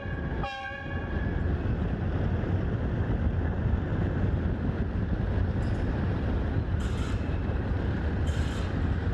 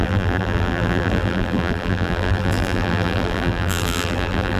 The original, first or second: first